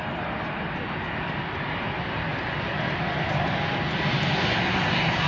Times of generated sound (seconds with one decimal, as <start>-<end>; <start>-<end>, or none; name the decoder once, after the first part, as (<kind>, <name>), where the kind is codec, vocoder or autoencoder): none